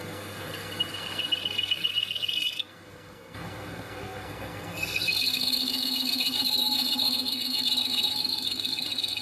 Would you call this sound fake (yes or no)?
yes